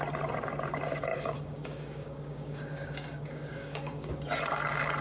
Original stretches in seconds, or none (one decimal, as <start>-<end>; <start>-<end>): 0.0-1.1; 4.1-5.0